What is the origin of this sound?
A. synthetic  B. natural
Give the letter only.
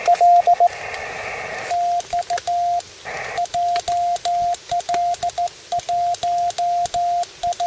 B